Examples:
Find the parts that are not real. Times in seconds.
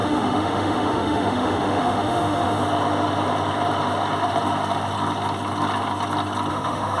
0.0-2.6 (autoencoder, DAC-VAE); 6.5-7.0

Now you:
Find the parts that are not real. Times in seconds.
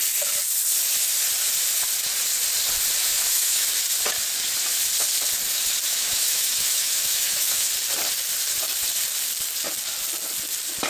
3.0-3.8 (autoencoder, DAC-VAE); 5.9-7.7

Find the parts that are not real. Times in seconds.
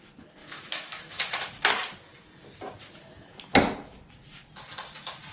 0.4-1.7 (autoencoder, DAC-VAE)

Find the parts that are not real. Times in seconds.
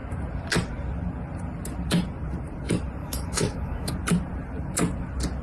3.0-3.9 (autoencoder, DAC-VAE)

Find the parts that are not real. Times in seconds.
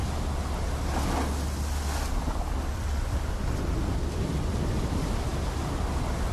none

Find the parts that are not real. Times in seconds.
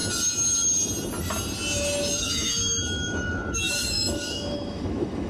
2.2-5.3 (autoencoder, DAC-VAE)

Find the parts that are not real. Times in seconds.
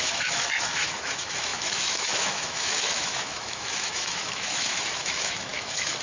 0.0-6.0 (autoencoder, DAC-VAE)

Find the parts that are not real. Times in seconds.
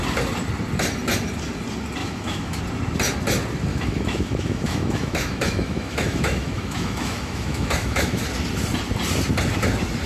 2.0-2.6 (autoencoder, DAC-VAE); 3.7-8.2